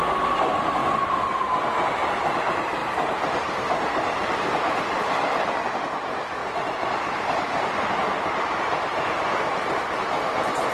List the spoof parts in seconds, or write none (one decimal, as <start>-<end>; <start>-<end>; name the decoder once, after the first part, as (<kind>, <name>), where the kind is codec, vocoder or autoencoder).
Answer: 2.8-5.0 (vocoder, BigVGAN v2); 6.4-9.8